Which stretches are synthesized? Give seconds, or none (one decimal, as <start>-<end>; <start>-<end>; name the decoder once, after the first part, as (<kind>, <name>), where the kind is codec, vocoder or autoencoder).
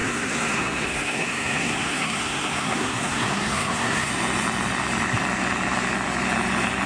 0.0-4.1 (codec, SNAC)